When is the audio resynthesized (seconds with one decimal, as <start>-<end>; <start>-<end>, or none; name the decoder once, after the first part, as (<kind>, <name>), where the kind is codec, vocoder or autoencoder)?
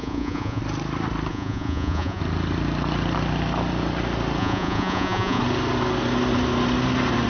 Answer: 0.0-0.6 (vocoder, Vocos); 1.3-2.2; 4.4-5.4